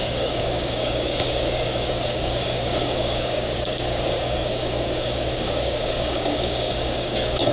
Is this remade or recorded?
remade